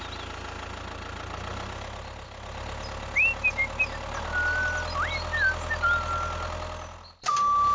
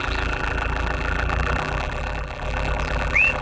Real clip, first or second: first